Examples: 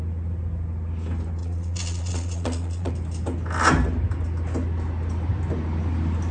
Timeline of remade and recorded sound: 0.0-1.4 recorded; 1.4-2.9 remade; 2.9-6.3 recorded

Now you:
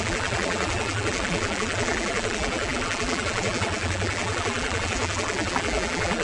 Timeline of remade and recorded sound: 0.0-6.2 remade

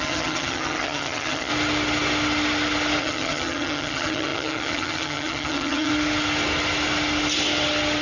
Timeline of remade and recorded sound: 0.0-1.5 remade; 1.5-3.0 recorded; 3.0-5.9 remade; 5.9-8.0 recorded